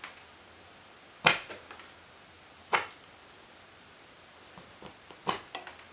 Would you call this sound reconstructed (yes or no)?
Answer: no